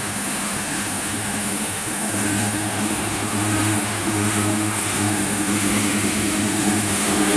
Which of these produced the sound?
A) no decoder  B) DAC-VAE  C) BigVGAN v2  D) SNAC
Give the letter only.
B